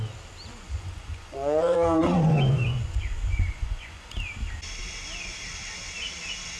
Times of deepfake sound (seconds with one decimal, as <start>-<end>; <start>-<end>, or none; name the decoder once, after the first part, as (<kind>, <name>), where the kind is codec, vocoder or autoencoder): 0.5-4.1 (vocoder, Vocos)